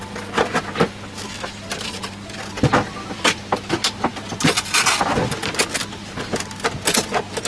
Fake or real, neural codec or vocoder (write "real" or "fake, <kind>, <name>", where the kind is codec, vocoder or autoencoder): real